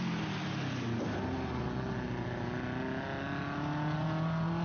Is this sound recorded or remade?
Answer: recorded